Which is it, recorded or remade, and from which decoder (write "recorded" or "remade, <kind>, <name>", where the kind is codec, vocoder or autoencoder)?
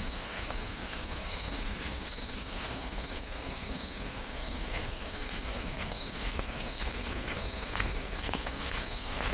remade, codec, SNAC